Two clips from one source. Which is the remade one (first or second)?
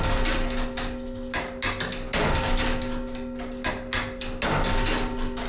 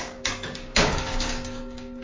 second